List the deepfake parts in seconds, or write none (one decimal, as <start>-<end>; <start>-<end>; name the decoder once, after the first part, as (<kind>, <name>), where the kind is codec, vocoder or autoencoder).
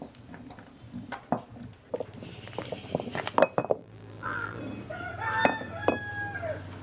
3.8-4.6 (vocoder, BigVGAN v2)